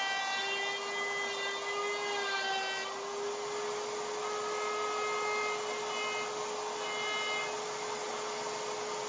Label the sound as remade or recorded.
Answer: recorded